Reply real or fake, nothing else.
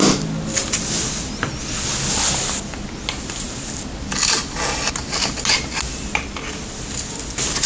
real